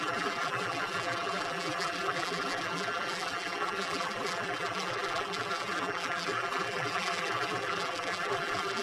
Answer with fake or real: fake